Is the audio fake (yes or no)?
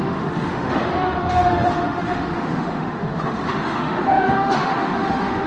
yes